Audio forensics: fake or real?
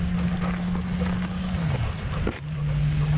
real